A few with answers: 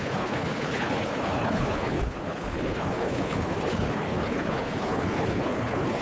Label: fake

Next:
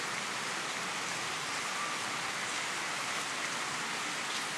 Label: real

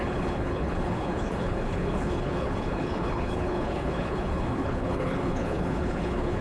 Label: fake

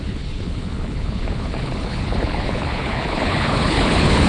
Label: fake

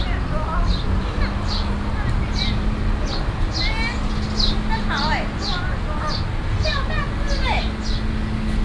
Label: real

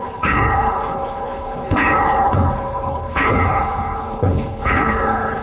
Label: fake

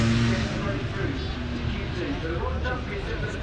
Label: real